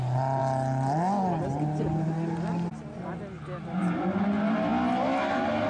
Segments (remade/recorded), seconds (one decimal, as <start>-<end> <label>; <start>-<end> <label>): 0.0-5.7 recorded